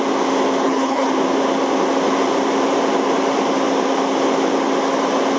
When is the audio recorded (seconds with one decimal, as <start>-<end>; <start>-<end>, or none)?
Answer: 0.0-0.6; 1.1-5.4